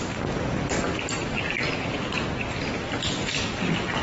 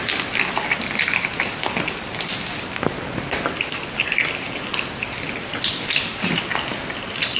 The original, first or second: second